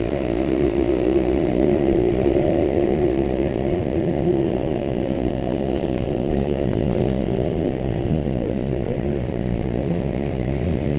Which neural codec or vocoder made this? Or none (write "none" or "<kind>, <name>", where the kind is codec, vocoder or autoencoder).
vocoder, Vocos